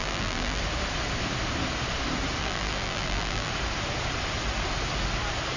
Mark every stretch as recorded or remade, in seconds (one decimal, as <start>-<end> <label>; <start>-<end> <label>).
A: 0.0-0.6 remade; 0.6-2.4 recorded; 2.4-3.5 remade; 3.5-5.6 recorded